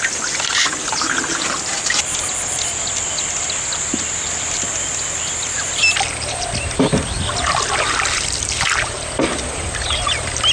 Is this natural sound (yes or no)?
yes